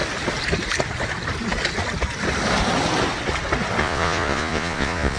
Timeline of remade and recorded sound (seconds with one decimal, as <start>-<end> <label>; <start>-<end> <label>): 0.0-3.8 recorded; 3.8-5.2 remade

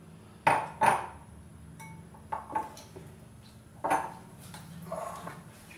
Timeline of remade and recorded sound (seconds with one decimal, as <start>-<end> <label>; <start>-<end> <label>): 0.0-5.8 recorded